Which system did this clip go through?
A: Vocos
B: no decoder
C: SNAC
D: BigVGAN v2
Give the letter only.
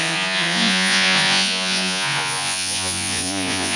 A